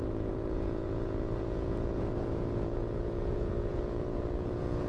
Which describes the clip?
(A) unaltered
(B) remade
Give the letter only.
B